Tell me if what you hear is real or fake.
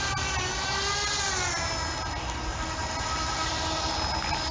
real